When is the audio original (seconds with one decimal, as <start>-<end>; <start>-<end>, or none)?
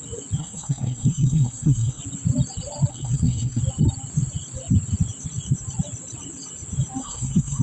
0.0-0.4; 2.0-2.9; 3.6-7.0